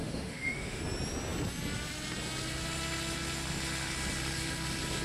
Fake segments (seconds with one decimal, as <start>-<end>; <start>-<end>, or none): 0.0-0.8